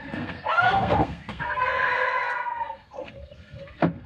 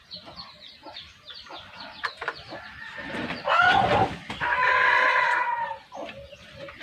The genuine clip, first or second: second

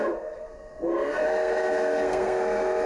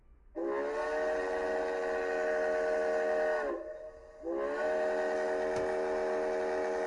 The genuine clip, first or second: second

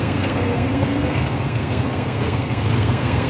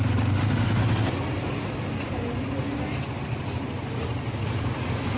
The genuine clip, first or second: second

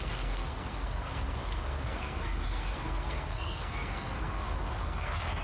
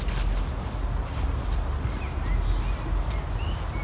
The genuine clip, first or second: second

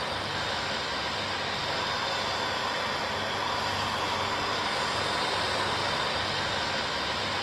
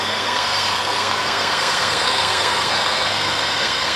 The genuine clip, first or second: first